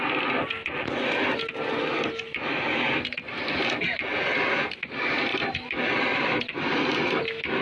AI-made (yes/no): yes